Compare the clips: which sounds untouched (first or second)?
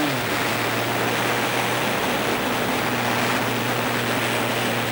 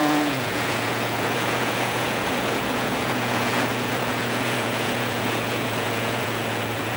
first